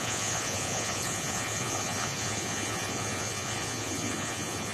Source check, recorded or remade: remade